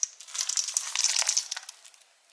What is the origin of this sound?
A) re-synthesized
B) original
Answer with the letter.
B